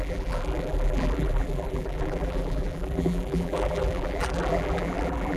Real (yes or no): no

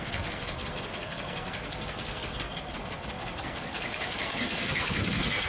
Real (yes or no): no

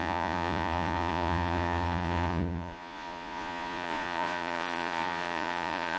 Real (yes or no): no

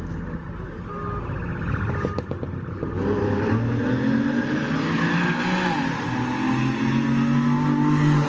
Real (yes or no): yes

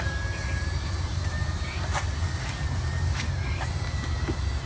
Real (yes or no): no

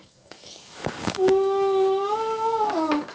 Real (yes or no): no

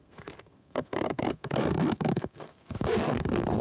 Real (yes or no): no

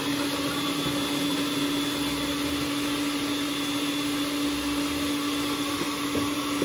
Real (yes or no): yes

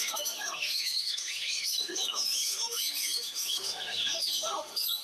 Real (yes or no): no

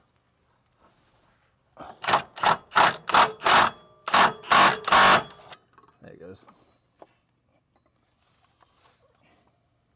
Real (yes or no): yes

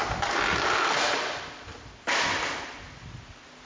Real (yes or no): yes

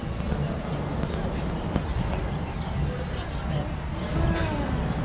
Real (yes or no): yes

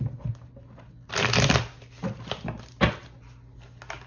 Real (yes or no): yes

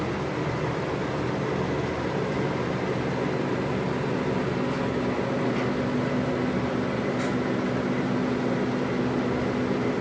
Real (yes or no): yes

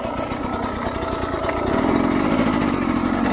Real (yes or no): yes